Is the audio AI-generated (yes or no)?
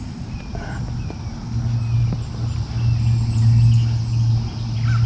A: no